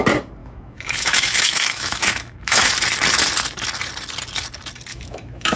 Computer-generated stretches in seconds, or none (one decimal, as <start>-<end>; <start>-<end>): 0.4-2.7; 4.9-5.6